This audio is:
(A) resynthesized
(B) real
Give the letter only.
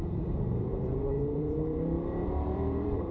A